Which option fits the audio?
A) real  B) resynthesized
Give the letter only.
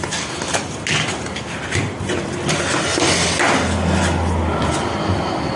A